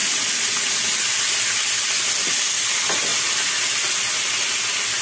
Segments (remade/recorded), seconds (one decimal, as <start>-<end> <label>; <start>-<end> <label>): 0.0-5.0 recorded